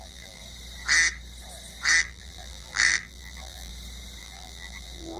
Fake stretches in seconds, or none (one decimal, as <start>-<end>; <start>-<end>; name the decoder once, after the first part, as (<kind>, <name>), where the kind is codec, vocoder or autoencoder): 0.0-0.4 (vocoder, BigVGAN v2); 2.0-3.7; 4.2-5.2